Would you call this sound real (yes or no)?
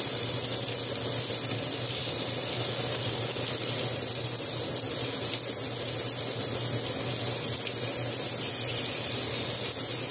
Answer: yes